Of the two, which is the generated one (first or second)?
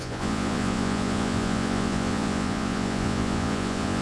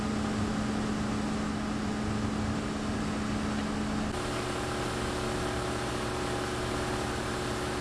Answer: first